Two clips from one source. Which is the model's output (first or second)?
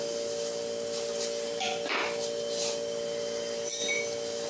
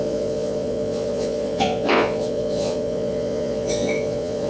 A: second